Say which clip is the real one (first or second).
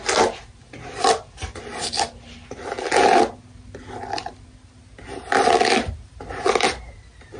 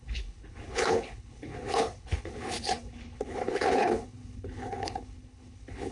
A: first